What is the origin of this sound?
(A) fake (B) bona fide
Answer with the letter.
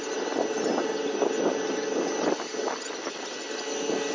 B